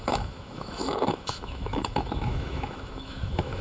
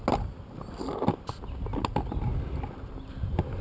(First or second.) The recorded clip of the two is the second